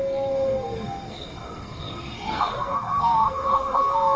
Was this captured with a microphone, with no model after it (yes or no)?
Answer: no